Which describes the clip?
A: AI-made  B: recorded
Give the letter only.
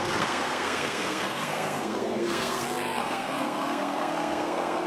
A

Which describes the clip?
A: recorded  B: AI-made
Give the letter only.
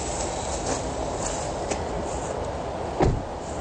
A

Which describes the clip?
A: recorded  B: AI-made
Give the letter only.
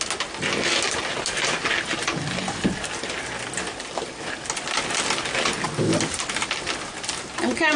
A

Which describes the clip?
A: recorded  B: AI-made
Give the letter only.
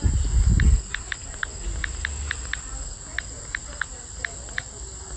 A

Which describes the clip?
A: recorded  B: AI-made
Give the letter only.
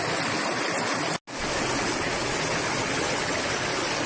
A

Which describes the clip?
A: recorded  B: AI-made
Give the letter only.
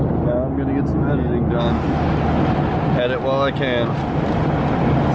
A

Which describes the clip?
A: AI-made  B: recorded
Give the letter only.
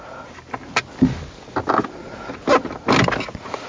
B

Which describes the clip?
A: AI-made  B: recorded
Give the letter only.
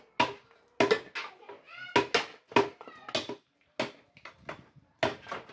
B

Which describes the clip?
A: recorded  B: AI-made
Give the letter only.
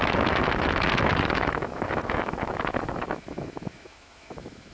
B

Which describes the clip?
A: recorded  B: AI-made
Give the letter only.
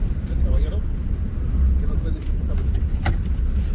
B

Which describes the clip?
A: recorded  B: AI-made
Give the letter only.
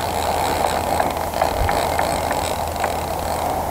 A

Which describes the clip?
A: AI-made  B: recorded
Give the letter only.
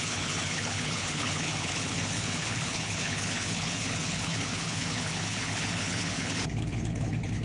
A